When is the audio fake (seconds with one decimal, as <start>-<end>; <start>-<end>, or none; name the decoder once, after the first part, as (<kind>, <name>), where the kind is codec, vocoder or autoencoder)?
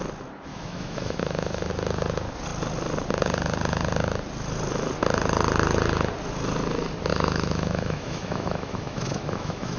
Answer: 0.5-1.7 (autoencoder, DAC-VAE); 7.1-9.8